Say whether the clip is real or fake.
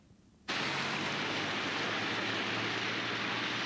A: real